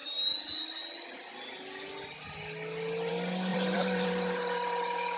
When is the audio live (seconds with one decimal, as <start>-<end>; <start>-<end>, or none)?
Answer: 0.0-3.5